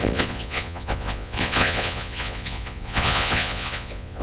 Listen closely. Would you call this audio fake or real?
fake